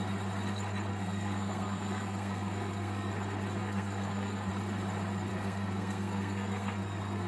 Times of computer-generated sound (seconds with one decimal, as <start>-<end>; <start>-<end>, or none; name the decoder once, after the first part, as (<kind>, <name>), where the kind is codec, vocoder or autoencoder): 0.9-3.1 (codec, SNAC); 3.6-4.5; 5.3-7.3